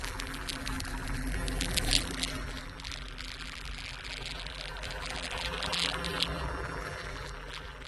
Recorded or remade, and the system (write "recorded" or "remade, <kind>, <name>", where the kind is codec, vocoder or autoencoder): remade, vocoder, BigVGAN v2